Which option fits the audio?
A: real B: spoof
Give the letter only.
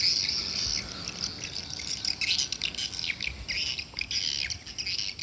A